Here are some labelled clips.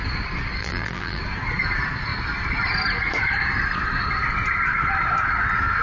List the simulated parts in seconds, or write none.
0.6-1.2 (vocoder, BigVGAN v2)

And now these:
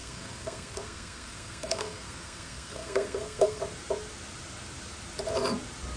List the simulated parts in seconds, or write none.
0.0-3.6 (codec, SNAC)

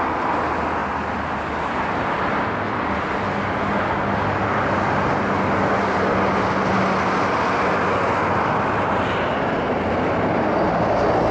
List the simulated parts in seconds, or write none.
none

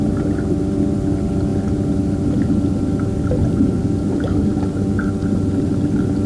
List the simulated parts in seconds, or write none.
3.8-4.5 (codec, DAC)

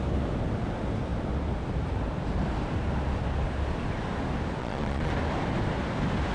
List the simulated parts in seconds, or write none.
4.6-5.1 (vocoder, Vocos)

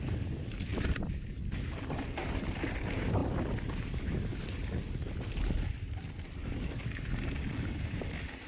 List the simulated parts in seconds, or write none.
none